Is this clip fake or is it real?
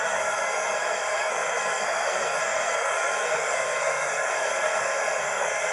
fake